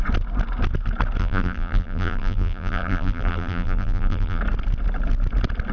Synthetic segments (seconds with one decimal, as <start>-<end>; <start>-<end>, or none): 1.2-4.4